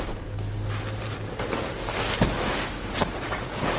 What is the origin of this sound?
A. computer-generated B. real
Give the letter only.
B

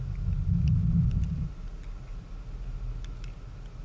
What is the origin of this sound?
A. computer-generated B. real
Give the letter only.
B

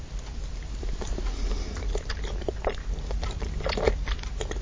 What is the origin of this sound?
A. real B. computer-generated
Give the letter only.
A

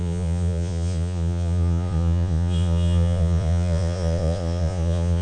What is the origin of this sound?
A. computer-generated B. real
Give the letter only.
A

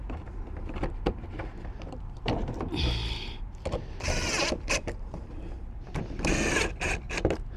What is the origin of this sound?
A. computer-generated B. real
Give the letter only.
B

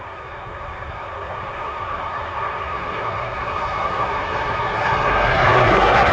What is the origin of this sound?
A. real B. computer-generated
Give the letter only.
B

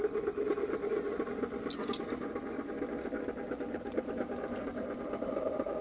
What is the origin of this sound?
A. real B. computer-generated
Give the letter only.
A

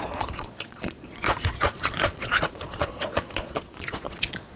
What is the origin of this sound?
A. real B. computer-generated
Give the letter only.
B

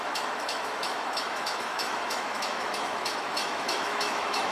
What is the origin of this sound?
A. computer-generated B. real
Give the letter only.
A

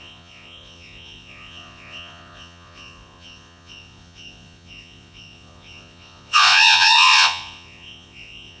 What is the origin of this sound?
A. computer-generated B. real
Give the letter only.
A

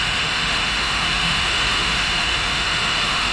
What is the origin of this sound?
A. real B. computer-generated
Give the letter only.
B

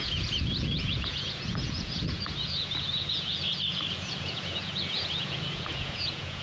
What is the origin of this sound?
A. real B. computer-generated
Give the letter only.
B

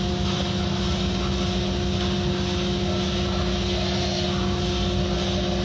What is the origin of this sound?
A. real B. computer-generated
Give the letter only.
A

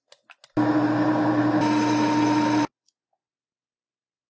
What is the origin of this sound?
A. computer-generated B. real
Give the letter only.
B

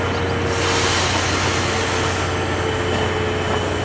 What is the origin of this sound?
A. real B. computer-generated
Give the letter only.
A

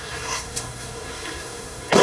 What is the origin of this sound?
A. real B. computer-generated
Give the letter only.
B